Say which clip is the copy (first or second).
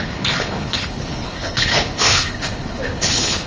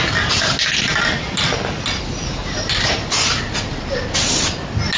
first